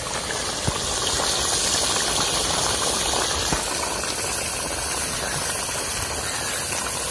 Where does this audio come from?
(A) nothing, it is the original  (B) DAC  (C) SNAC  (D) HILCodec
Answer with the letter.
A